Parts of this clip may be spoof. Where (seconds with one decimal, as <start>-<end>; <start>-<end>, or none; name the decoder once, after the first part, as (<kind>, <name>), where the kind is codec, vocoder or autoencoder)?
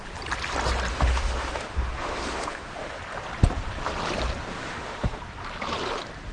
0.9-3.0 (autoencoder, DAC-VAE); 4.5-5.2